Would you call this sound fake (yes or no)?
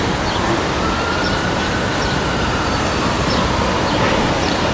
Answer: yes